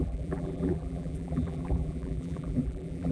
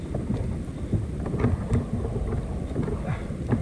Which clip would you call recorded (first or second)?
second